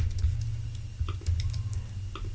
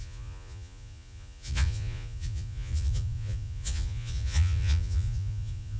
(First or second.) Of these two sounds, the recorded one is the first